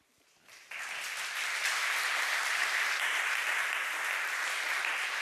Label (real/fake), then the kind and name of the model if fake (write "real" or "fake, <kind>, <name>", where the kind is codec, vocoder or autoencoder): fake, vocoder, BigVGAN v2